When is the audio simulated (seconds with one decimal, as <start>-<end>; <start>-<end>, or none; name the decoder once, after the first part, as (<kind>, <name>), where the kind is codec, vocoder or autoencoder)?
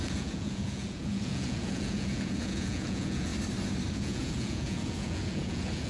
0.0-3.3 (vocoder, Vocos); 3.9-5.9